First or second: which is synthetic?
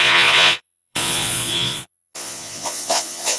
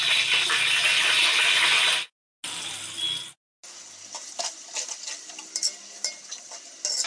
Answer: first